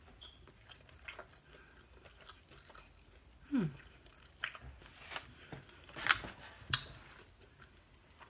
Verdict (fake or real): real